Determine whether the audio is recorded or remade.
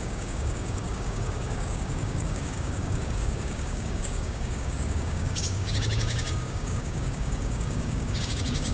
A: remade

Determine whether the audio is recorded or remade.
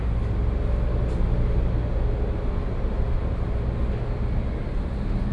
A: recorded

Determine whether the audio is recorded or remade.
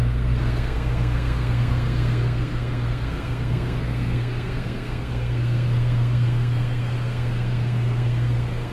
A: remade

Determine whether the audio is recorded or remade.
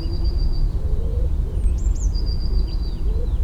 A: remade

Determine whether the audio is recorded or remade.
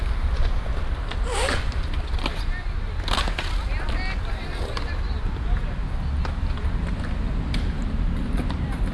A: recorded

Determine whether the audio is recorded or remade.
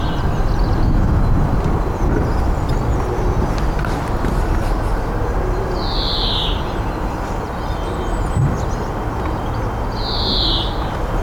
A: recorded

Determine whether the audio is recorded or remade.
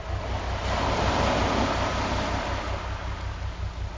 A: recorded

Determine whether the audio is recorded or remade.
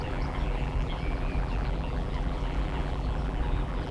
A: remade